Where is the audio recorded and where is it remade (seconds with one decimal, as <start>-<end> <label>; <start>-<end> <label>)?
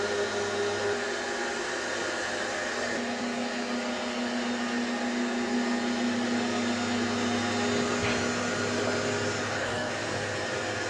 0.0-9.4 recorded; 9.4-9.9 remade; 9.9-10.9 recorded